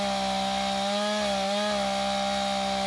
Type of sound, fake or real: real